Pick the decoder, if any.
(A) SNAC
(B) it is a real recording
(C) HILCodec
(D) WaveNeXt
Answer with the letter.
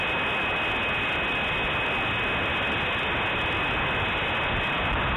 B